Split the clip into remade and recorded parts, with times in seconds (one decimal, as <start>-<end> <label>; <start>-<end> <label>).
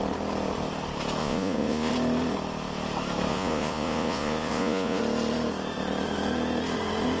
0.0-1.2 recorded; 1.2-1.9 remade; 1.9-3.3 recorded; 3.3-5.0 remade; 5.0-7.2 recorded